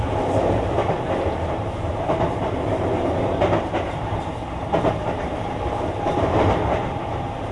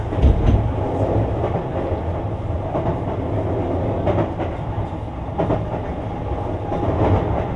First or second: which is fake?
first